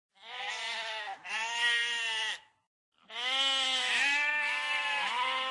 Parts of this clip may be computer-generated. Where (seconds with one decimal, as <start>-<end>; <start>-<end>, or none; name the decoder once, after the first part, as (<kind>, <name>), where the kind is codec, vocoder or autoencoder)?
none